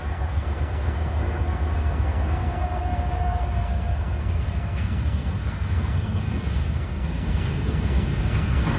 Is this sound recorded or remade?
remade